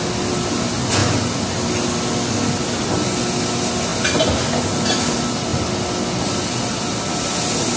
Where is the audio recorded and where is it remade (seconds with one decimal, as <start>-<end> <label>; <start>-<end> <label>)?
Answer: 0.0-7.8 recorded